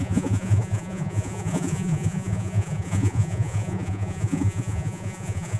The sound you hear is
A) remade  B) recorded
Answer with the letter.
A